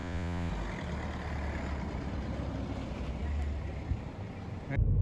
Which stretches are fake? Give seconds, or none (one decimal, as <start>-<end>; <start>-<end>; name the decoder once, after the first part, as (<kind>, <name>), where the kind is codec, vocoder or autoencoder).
0.0-0.5 (vocoder, Vocos)